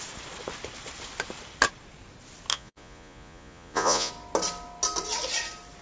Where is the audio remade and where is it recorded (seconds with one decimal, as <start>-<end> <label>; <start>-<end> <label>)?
0.0-2.5 recorded; 2.5-4.1 remade; 4.1-5.8 recorded